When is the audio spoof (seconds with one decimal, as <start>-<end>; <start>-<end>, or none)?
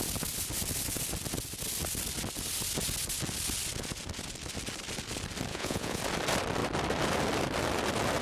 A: 5.5-6.0